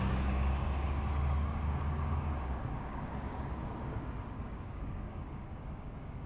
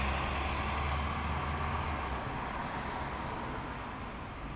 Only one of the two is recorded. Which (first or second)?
second